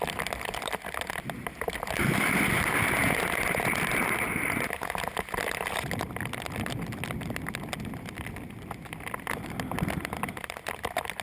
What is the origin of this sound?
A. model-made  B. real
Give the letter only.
B